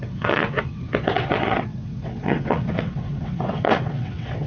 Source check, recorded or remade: remade